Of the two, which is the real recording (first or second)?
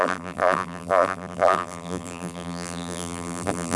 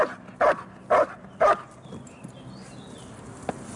second